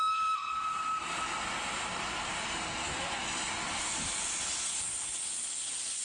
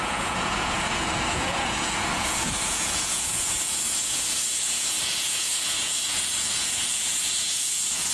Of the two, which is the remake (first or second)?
second